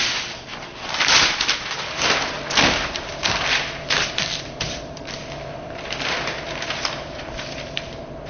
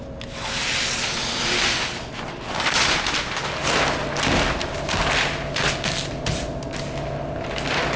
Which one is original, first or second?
second